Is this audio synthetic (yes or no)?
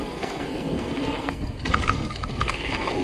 yes